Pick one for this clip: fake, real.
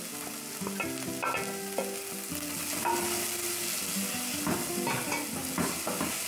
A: real